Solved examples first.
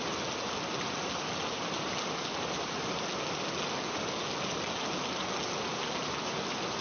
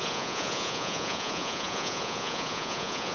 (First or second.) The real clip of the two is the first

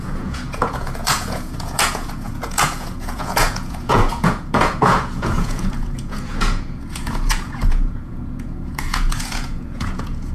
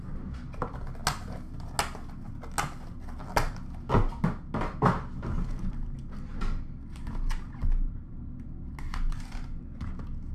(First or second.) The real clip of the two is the second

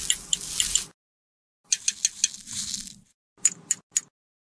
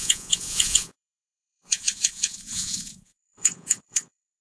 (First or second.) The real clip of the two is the first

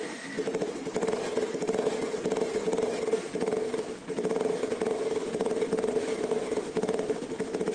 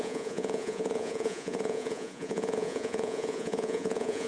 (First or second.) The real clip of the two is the first